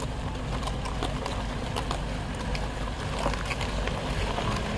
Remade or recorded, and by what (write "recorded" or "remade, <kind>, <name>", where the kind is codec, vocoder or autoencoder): recorded